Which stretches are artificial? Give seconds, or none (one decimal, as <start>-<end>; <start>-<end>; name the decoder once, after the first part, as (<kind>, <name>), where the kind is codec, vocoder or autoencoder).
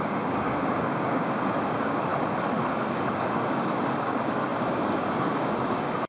0.0-2.1 (codec, DAC); 2.7-6.1